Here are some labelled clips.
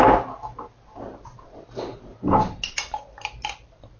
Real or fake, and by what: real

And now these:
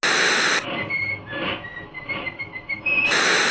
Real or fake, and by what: real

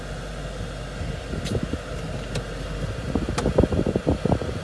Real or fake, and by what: real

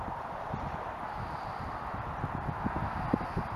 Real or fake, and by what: real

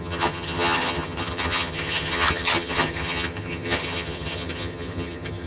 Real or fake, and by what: fake, vocoder, HiFi-GAN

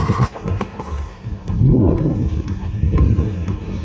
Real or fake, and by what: fake, codec, SNAC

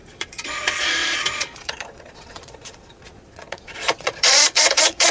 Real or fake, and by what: fake, vocoder, Vocos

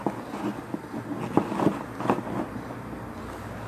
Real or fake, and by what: real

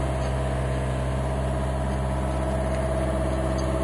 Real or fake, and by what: real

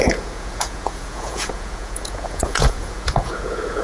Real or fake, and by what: fake, vocoder, Vocos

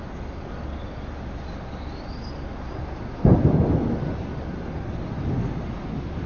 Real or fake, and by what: real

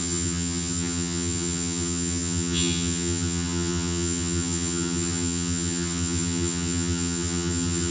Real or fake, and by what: fake, vocoder, HiFi-GAN